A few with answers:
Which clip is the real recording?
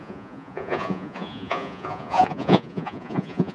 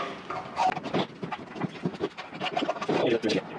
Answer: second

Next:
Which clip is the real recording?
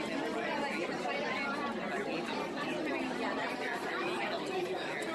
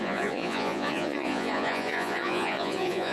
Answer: first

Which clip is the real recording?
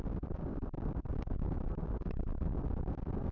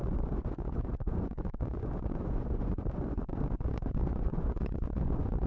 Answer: first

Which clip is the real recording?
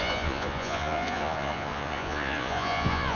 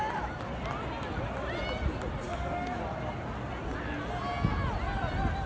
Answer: second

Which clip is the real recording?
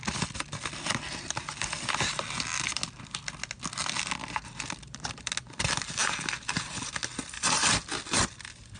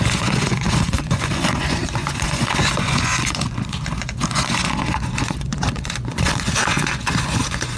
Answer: first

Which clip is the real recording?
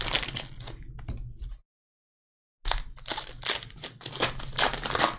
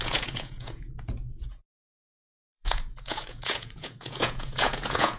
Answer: first